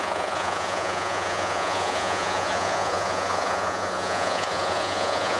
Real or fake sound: fake